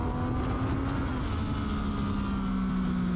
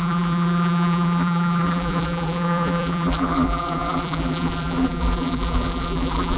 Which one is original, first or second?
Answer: first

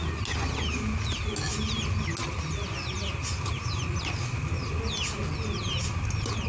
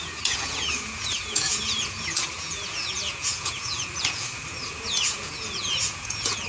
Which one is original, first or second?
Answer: first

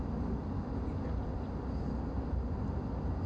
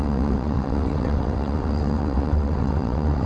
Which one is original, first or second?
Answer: first